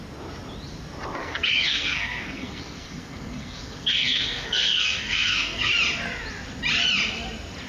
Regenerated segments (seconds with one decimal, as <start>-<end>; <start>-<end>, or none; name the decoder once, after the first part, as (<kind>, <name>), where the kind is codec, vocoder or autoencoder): 1.2-5.7 (codec, SNAC)